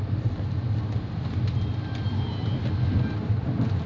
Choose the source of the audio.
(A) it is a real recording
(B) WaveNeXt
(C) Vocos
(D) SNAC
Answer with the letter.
A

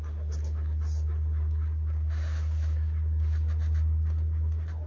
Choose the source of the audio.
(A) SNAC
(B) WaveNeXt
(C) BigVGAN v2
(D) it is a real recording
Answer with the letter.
D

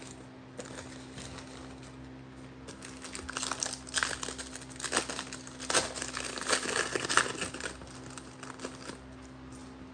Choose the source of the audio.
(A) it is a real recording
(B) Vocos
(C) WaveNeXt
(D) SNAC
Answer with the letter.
A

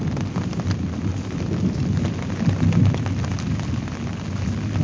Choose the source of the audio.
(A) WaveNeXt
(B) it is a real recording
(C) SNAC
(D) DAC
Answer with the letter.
B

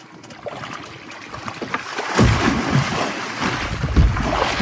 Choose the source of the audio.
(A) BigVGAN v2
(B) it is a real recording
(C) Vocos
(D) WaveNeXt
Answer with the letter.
B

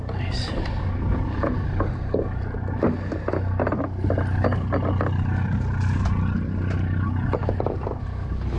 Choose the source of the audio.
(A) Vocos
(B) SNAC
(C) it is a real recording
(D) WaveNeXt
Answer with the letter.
C